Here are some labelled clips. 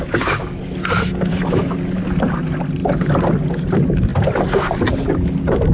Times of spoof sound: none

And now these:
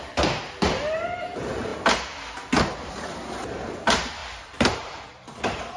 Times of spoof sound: 4.2-4.9 (vocoder, BigVGAN v2)

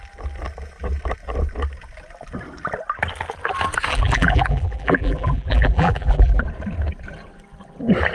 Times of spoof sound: 3.9-6.4 (vocoder, BigVGAN v2)